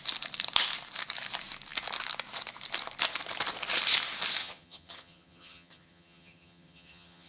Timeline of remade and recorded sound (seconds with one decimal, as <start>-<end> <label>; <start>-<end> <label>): 0.0-4.4 recorded; 4.4-7.3 remade